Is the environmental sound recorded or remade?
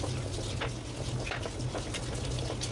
recorded